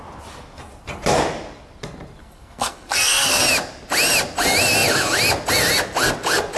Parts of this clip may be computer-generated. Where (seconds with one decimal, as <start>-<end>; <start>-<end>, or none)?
2.2-3.4